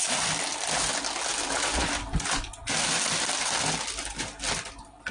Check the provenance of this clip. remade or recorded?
recorded